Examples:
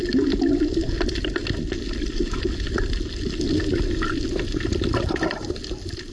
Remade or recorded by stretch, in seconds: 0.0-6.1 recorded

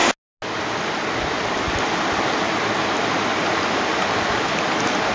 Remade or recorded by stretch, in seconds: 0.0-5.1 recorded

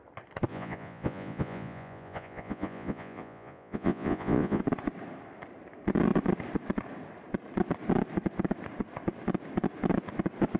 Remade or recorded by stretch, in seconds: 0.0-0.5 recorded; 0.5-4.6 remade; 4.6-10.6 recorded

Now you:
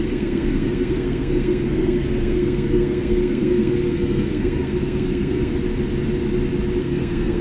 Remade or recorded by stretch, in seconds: 0.0-5.5 remade; 5.5-6.8 recorded; 6.8-7.4 remade

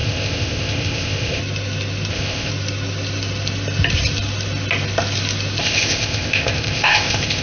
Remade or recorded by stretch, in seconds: 0.0-1.4 remade; 1.4-2.1 recorded; 2.1-2.5 remade; 2.5-5.6 recorded; 5.6-7.4 remade

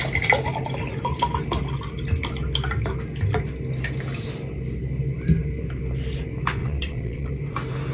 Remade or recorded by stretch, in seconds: 0.0-6.6 recorded; 6.6-7.3 remade; 7.3-7.9 recorded